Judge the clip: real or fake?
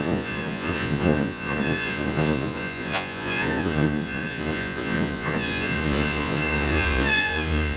fake